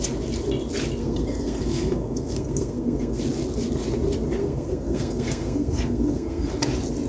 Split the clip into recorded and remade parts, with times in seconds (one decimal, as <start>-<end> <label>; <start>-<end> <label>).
0.0-1.0 recorded; 1.0-3.2 remade; 3.2-4.4 recorded; 4.4-6.5 remade; 6.5-7.1 recorded